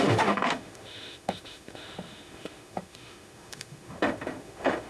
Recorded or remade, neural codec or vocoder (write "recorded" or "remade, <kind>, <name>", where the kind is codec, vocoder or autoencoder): remade, autoencoder, DAC-VAE